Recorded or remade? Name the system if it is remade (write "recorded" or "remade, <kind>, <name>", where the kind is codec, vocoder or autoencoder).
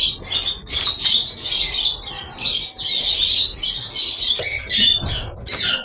recorded